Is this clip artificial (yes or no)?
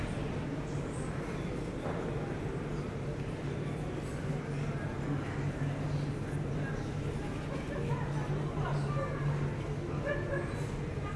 no